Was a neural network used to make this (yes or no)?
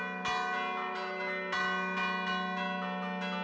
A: no